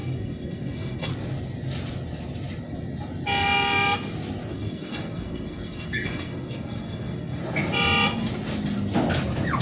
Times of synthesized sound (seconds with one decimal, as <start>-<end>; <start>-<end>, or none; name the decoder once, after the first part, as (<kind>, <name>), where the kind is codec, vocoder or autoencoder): 0.0-1.1 (codec, SNAC); 4.5-7.4